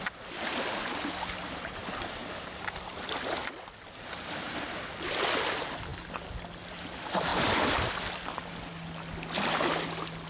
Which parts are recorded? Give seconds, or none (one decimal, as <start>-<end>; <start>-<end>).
0.0-10.3